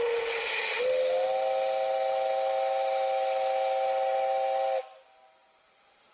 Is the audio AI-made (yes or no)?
no